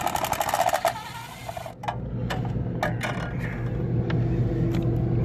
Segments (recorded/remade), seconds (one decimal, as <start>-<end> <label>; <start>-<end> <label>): 0.0-5.2 recorded